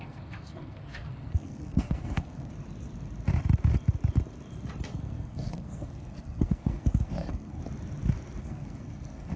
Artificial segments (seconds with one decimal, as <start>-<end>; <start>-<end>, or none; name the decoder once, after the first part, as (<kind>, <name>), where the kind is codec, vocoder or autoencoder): 0.0-2.5 (codec, SNAC); 4.9-7.6; 8.4-9.4